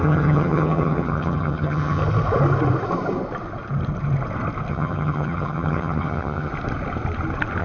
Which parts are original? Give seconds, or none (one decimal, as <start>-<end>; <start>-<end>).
2.0-4.7; 6.5-7.6

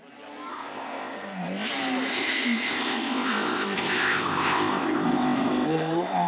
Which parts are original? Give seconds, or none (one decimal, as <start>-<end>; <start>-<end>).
0.0-0.5; 1.7-2.1

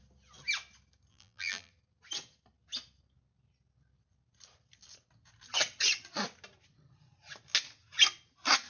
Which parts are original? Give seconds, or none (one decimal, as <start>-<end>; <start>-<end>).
0.0-1.1; 1.7-8.7

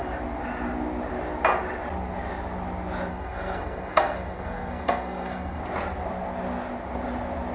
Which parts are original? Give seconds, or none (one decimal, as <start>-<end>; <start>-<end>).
0.0-3.1; 5.6-7.5